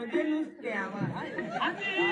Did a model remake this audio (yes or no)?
no